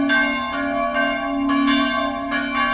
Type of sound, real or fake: real